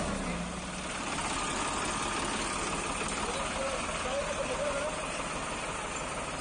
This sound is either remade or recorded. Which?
recorded